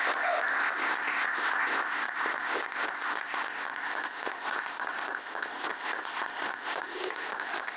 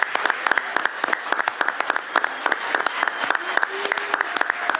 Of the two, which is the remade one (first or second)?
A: first